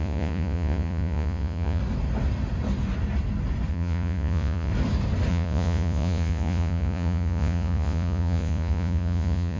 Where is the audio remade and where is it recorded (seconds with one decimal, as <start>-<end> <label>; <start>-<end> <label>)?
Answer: 0.0-1.8 remade; 1.8-3.7 recorded; 3.7-4.7 remade; 4.7-5.3 recorded; 5.3-9.6 remade